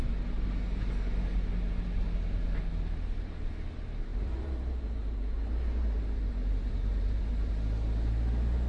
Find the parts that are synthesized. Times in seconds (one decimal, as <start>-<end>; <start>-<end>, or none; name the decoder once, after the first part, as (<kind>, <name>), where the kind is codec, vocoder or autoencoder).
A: 4.1-7.5 (vocoder, BigVGAN v2)